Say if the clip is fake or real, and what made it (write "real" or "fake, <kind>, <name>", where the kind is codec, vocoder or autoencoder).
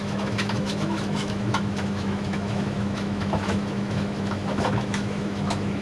fake, autoencoder, DAC-VAE